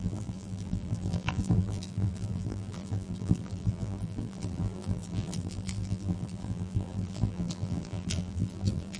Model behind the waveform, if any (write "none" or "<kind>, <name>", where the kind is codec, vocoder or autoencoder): vocoder, BigVGAN v2